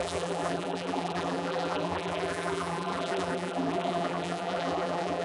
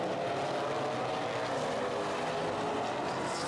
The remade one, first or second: first